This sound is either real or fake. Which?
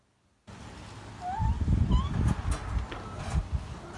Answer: real